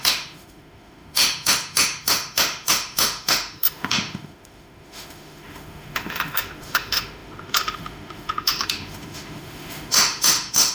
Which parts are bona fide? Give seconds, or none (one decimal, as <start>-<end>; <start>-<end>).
none